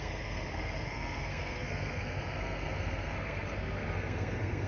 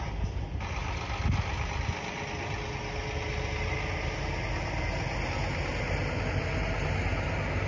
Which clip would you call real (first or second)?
second